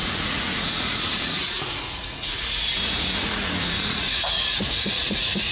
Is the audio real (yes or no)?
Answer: no